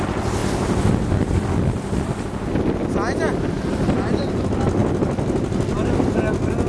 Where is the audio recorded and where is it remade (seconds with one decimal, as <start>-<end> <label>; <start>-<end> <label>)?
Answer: 0.0-6.7 recorded